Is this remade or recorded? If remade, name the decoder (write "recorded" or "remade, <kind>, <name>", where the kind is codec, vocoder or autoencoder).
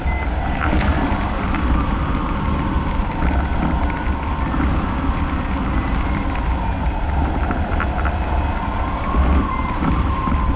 recorded